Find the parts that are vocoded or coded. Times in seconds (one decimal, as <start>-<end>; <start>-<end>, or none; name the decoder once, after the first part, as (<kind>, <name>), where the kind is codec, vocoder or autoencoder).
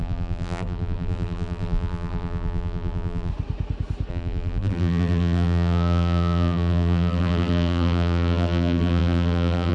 0.0-3.3 (vocoder, BigVGAN v2); 4.1-9.7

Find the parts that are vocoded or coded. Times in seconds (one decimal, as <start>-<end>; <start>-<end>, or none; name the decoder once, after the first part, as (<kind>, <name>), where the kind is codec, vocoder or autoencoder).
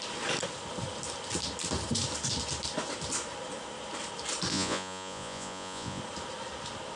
4.5-6.0 (vocoder, Vocos)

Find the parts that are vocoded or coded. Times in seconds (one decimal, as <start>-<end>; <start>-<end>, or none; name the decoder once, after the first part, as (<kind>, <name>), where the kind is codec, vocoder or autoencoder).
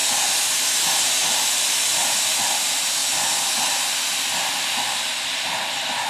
none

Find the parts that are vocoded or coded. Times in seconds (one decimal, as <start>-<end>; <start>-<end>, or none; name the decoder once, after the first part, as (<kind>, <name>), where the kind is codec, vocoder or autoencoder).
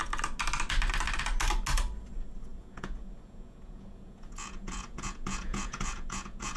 2.5-6.6 (vocoder, Vocos)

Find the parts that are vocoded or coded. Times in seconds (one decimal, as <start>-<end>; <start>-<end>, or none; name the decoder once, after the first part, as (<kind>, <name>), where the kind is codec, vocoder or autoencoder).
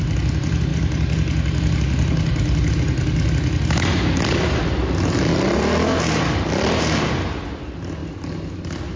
none